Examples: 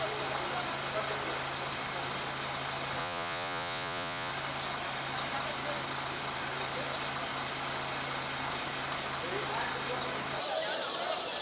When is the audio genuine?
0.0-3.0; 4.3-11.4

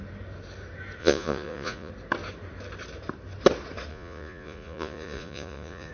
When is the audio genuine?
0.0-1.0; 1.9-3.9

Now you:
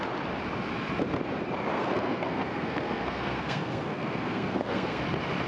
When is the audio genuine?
0.0-1.7; 5.0-5.5